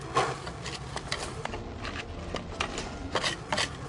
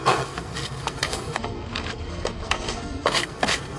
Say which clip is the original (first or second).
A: first